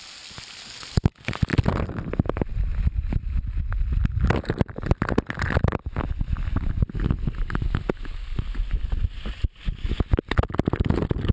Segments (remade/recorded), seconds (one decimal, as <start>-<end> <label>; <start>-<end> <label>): 0.0-11.3 recorded